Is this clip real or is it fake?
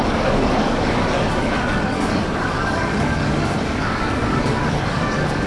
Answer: fake